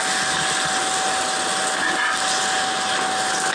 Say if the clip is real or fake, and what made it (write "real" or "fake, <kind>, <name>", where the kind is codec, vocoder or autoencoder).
real